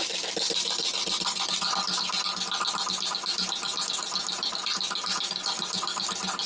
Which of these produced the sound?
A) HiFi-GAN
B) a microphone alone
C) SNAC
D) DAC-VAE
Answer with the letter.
B